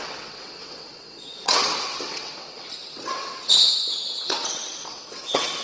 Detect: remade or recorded remade